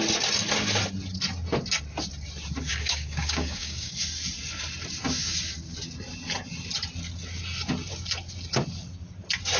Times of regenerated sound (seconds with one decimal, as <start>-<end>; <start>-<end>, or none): 2.7-3.9

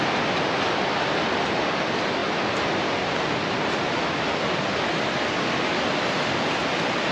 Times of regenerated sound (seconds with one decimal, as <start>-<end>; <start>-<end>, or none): none

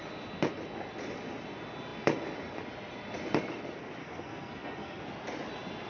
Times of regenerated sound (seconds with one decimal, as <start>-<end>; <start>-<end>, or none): 4.0-5.0